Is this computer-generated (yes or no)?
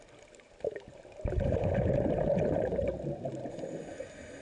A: no